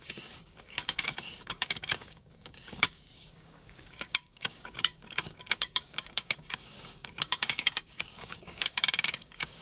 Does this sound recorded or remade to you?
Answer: remade